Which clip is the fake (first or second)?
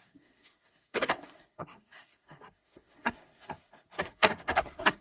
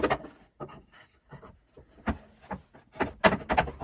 first